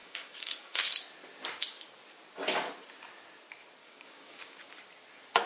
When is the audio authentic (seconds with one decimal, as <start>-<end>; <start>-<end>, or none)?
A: 1.0-3.8; 4.6-5.5